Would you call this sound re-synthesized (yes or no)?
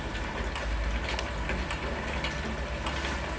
no